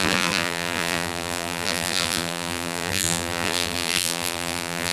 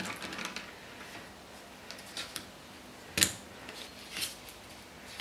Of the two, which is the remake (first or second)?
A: first